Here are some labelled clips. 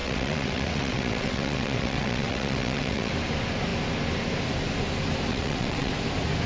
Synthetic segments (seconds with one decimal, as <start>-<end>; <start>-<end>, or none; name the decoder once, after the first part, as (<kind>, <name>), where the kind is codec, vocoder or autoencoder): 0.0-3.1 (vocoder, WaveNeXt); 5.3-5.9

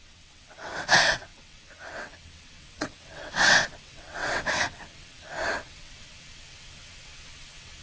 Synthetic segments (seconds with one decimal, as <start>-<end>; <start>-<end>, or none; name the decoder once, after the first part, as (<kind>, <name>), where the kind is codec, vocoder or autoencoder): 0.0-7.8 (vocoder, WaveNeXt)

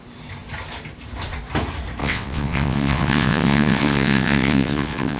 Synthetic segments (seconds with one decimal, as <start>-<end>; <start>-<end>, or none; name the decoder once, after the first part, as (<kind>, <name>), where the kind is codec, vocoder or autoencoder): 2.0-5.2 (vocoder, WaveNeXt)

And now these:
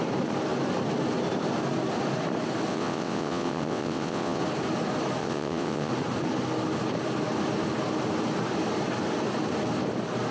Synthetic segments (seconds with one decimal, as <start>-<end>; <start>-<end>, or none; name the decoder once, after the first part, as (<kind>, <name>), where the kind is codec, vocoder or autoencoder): 2.7-4.4 (vocoder, WaveNeXt); 5.2-5.9

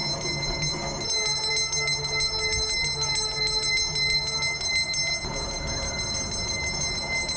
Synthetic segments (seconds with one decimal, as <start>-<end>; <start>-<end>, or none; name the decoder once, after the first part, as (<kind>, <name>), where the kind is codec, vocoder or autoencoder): none